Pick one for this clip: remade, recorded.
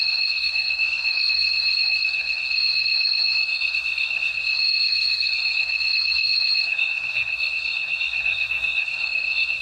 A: remade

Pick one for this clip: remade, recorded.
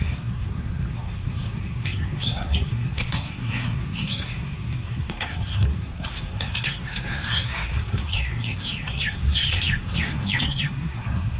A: remade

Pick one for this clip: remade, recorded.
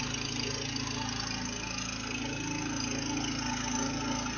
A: recorded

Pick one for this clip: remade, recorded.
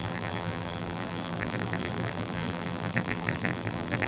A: remade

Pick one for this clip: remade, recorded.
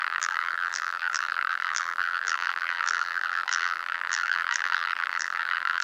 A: remade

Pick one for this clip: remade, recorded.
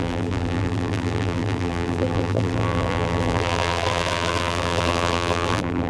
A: remade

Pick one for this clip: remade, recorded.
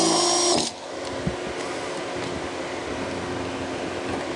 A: recorded